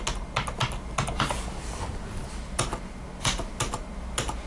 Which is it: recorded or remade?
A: recorded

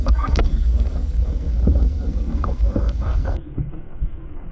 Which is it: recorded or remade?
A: remade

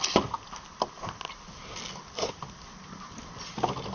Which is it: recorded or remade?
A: recorded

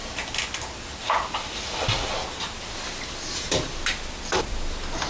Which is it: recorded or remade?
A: recorded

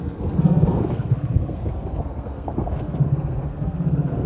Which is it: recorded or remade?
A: remade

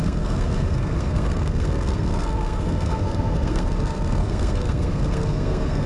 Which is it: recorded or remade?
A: remade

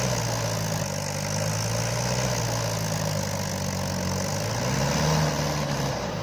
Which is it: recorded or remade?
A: recorded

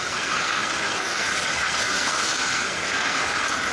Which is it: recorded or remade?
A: remade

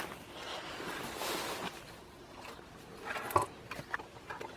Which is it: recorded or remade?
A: recorded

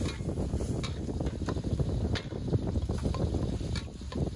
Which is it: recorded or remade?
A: recorded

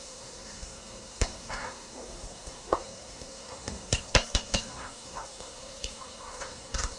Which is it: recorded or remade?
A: remade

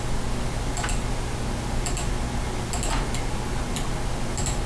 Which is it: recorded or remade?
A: recorded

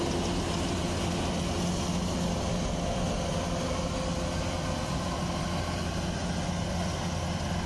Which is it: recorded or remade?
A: recorded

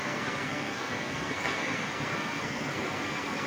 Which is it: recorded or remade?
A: remade